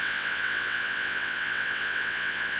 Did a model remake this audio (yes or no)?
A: yes